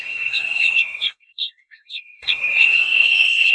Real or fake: fake